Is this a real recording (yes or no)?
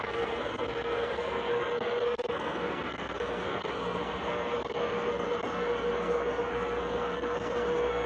no